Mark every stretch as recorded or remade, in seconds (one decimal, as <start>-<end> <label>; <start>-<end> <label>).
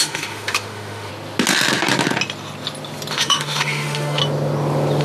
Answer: 0.0-1.1 remade; 1.1-3.1 recorded; 3.1-4.2 remade; 4.2-5.0 recorded